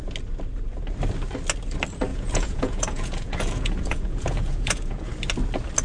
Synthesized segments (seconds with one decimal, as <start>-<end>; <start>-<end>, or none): 2.1-5.1